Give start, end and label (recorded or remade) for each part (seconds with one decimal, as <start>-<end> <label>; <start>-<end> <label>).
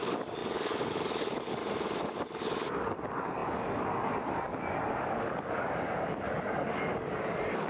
0.0-1.6 remade; 1.6-2.4 recorded; 2.4-7.7 remade